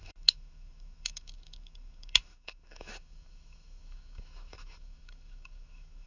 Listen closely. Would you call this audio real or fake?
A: fake